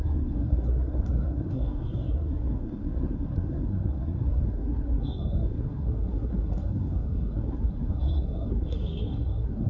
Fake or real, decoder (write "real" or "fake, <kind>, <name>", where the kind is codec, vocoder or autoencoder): fake, codec, SNAC